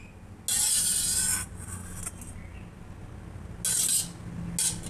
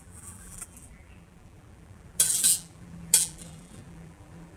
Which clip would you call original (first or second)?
first